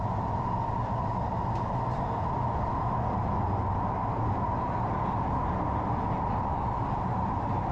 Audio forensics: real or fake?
real